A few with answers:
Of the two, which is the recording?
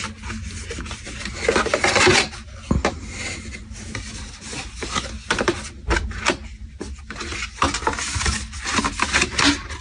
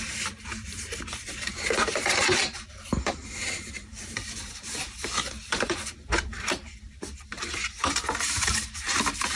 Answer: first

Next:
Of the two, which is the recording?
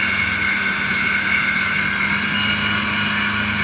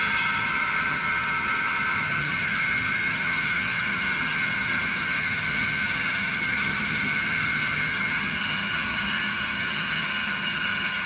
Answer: first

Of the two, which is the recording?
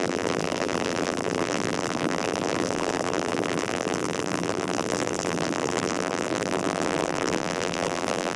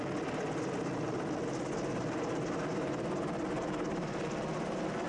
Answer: second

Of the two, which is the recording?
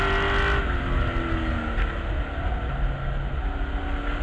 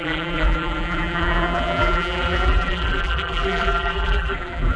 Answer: first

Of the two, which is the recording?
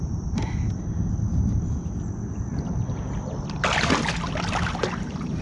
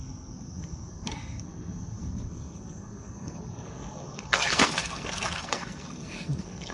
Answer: first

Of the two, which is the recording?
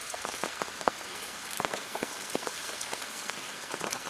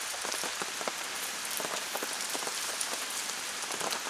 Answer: second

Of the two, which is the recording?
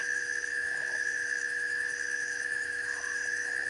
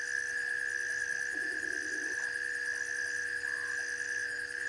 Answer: second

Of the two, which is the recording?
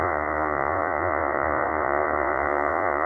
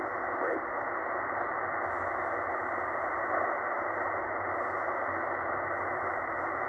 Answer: second